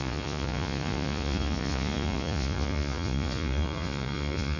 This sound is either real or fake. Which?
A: fake